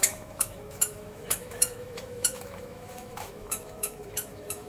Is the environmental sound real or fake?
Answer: fake